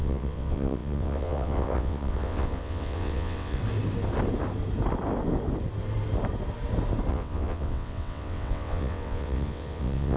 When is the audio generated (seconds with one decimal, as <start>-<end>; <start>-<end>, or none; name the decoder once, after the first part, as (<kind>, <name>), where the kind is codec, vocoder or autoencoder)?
0.0-3.6 (vocoder, WaveNeXt); 7.1-10.2